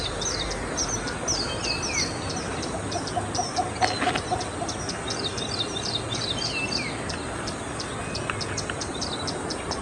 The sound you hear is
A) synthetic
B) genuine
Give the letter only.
B